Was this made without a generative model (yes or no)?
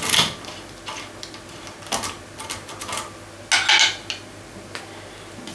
yes